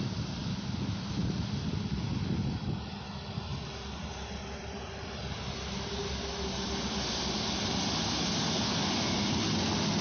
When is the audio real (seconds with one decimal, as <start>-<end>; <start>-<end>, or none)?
0.0-10.0